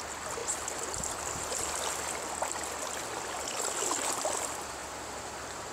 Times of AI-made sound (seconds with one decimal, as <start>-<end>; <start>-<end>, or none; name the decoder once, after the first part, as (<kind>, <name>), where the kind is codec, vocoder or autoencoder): none